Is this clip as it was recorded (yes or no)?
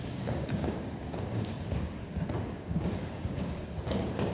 no